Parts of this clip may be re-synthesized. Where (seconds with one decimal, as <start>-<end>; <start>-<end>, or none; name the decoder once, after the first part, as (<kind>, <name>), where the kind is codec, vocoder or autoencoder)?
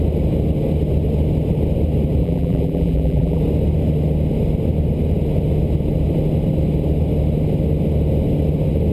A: 2.2-3.4 (vocoder, BigVGAN v2)